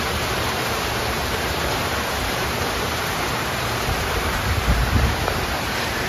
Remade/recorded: remade